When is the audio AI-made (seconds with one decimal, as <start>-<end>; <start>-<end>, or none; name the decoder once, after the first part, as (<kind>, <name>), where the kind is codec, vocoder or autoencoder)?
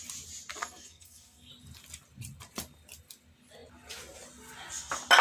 0.6-1.5 (codec, SNAC)